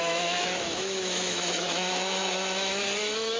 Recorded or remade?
remade